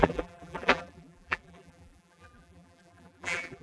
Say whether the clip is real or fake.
fake